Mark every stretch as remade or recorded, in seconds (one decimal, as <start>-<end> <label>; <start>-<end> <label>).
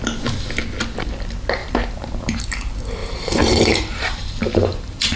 0.0-1.6 recorded; 1.6-2.4 remade; 2.4-3.0 recorded; 3.0-5.2 remade